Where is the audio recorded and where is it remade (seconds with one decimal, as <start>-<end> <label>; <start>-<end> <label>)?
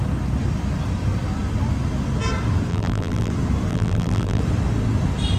0.0-2.7 recorded; 2.7-3.3 remade; 3.3-3.7 recorded; 3.7-4.4 remade; 4.4-5.4 recorded